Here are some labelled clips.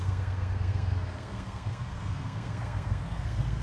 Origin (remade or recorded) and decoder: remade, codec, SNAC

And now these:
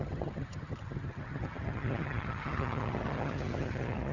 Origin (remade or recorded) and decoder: remade, vocoder, HiFi-GAN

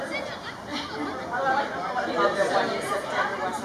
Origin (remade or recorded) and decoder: recorded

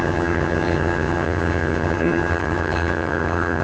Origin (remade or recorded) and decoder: remade, vocoder, HiFi-GAN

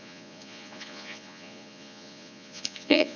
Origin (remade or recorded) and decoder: remade, vocoder, Vocos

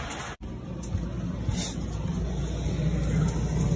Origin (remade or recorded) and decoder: recorded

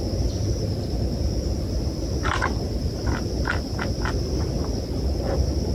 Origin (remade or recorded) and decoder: recorded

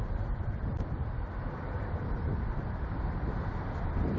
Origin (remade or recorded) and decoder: remade, vocoder, BigVGAN v2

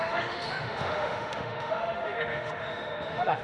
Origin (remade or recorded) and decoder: remade, autoencoder, DAC-VAE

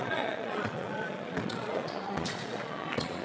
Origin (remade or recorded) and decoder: remade, vocoder, Vocos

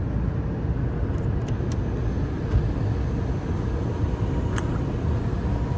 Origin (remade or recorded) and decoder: recorded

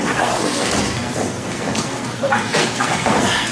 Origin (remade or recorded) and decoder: remade, codec, SNAC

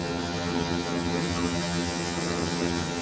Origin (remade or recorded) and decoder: remade, vocoder, HiFi-GAN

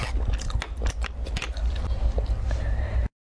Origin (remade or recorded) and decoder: recorded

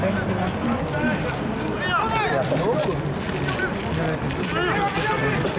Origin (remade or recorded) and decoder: recorded